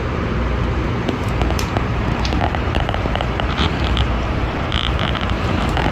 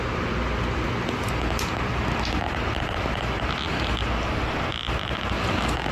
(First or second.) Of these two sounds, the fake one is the first